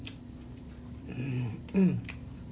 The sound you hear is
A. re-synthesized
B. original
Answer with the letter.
B